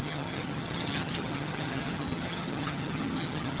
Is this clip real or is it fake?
fake